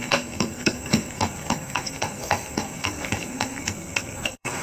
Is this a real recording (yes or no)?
no